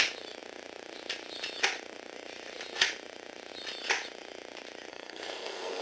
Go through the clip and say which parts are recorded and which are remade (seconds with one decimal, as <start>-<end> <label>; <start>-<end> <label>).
0.0-4.9 recorded; 4.9-5.8 remade